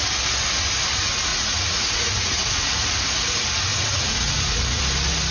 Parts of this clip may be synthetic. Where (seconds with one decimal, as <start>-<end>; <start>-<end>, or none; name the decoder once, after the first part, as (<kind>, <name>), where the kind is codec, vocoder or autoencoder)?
1.3-2.9 (vocoder, Vocos); 3.7-4.8